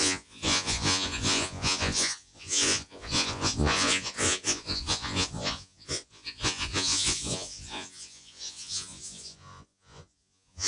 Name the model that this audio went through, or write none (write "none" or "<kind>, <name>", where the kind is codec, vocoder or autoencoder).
vocoder, Vocos